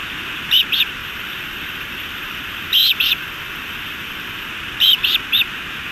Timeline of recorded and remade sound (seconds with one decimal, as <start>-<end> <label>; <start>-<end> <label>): 0.0-1.0 recorded; 1.0-4.5 remade; 4.5-5.9 recorded